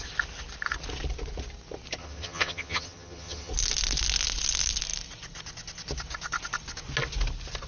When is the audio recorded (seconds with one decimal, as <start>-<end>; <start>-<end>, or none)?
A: 0.0-2.0; 3.5-7.7